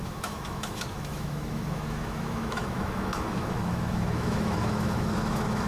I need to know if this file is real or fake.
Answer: fake